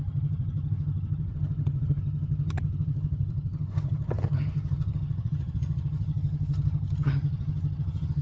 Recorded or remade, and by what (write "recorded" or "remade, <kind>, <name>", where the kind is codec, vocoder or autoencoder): remade, vocoder, HiFi-GAN